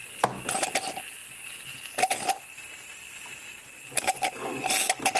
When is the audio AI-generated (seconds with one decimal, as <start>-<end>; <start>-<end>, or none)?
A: none